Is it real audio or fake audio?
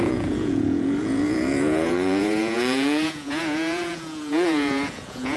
fake